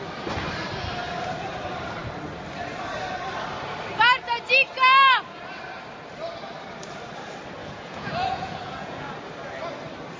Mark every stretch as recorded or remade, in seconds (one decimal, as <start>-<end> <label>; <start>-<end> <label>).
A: 0.0-7.6 recorded; 7.6-9.1 remade; 9.1-10.2 recorded